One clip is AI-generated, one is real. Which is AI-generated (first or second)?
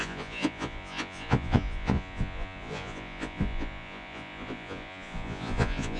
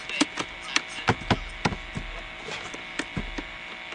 first